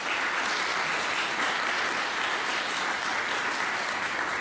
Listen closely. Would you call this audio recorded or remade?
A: recorded